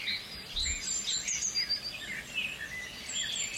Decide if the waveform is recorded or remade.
recorded